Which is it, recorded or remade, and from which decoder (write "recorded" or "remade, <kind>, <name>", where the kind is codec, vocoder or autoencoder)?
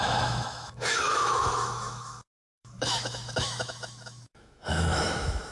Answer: remade, autoencoder, DAC-VAE